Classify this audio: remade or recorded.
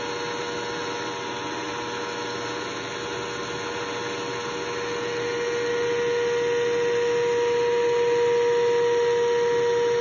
recorded